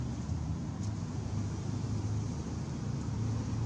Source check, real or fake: real